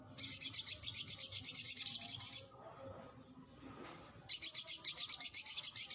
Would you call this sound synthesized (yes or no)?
no